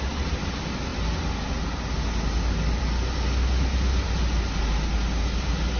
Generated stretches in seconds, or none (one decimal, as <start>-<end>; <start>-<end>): none